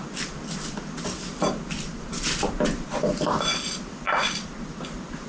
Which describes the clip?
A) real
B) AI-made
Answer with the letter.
A